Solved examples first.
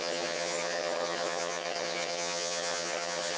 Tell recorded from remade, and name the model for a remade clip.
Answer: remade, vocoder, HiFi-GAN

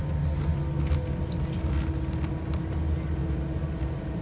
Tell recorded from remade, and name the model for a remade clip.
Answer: recorded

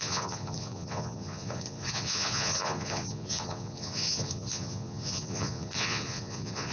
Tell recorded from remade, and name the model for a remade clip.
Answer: remade, vocoder, Vocos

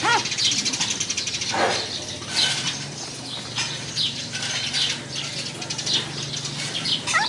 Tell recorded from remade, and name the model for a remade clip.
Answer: recorded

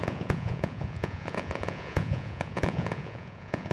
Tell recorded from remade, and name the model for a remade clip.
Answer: remade, vocoder, Vocos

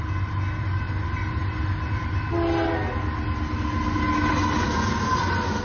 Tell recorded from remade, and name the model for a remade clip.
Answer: recorded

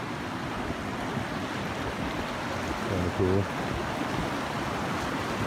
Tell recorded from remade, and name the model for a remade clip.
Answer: recorded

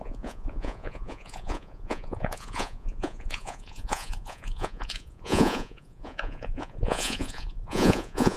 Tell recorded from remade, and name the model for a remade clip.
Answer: remade, vocoder, Vocos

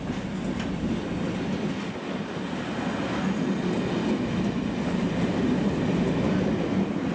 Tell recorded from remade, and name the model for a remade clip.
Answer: recorded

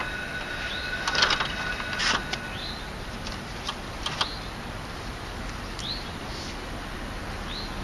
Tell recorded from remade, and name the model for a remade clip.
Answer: recorded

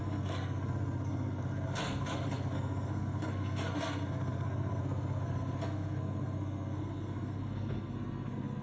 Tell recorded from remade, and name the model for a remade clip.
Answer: remade, codec, SNAC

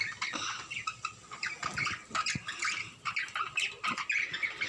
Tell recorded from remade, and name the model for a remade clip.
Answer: recorded